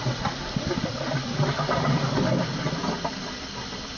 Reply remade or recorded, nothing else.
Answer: remade